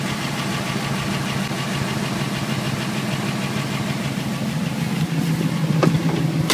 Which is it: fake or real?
real